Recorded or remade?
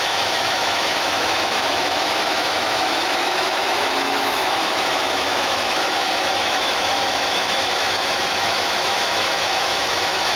remade